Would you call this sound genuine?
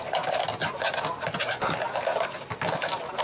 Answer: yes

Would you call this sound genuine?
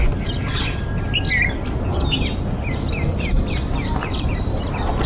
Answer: yes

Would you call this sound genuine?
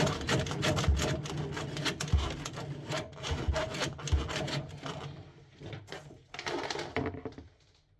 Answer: yes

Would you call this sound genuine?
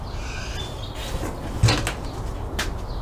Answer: yes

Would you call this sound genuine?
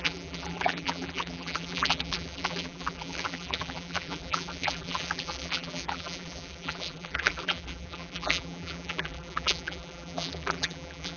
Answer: no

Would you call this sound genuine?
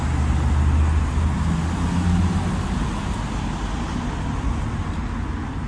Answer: yes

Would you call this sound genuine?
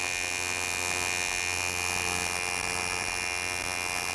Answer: yes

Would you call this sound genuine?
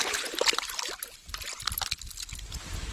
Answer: yes